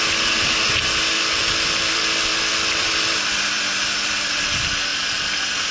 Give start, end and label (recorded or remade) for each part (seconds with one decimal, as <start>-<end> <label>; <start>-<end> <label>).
0.0-1.4 recorded; 1.4-4.4 remade; 4.4-4.9 recorded; 4.9-5.7 remade